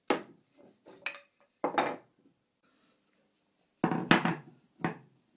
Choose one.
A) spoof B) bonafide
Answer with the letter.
B